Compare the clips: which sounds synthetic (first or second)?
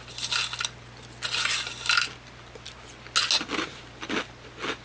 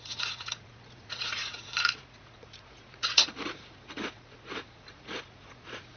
second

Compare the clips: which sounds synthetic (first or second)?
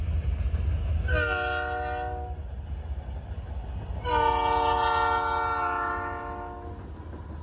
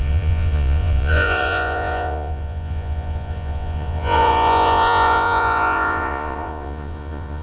second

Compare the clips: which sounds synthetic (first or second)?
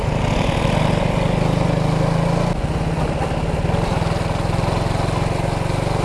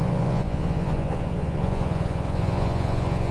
second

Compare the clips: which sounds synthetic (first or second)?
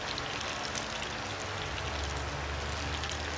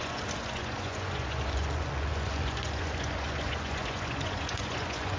second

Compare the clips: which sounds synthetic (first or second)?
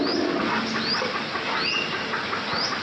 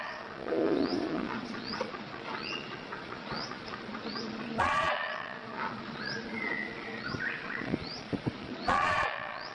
second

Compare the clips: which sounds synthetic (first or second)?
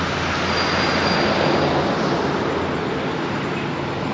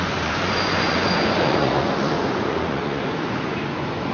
second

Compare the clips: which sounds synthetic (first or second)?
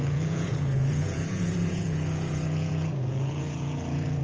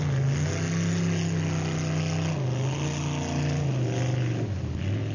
first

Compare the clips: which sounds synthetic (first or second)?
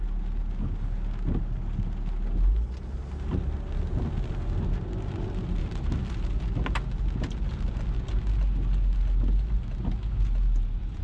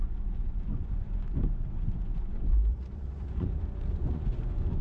second